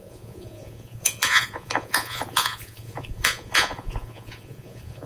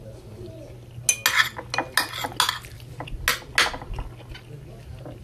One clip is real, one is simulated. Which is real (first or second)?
second